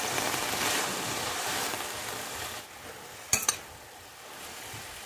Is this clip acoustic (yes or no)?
no